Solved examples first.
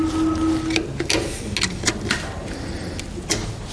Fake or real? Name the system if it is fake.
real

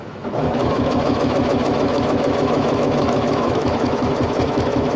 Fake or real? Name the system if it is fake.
fake, autoencoder, DAC-VAE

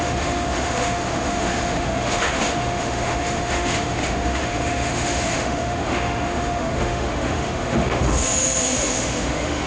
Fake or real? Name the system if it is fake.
fake, autoencoder, DAC-VAE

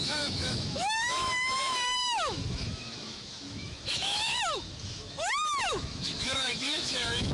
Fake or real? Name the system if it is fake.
fake, autoencoder, DAC-VAE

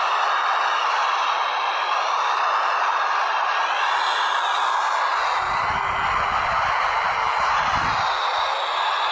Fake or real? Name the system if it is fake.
real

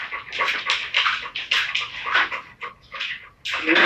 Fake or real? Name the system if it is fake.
real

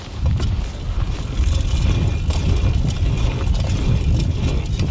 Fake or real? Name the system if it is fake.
real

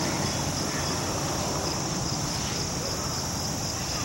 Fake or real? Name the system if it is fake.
real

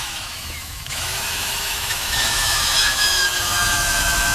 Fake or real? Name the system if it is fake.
fake, autoencoder, DAC-VAE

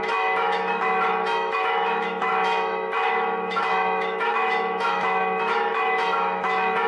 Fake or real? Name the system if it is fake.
fake, autoencoder, DAC-VAE